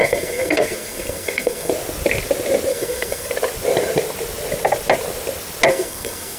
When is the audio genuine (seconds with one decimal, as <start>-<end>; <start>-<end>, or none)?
1.7-2.7; 3.3-5.7